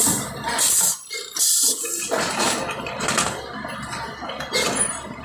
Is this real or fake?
real